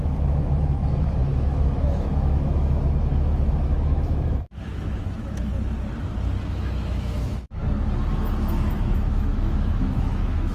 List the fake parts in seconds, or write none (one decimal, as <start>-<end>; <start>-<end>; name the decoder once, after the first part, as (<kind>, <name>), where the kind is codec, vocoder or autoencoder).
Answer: 0.0-5.5 (autoencoder, DAC-VAE); 6.5-7.6; 8.1-10.5